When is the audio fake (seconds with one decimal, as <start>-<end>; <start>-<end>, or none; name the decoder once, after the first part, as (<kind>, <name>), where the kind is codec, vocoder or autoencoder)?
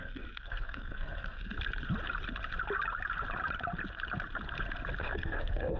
0.0-1.5 (codec, SNAC); 5.0-5.8